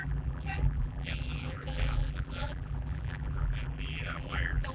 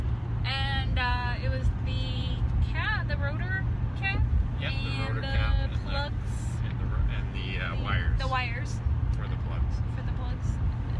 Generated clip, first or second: first